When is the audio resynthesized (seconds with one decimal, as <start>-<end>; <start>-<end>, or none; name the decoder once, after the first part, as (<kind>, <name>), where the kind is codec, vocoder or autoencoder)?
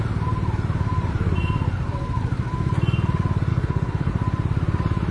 3.5-4.1 (codec, HILCodec)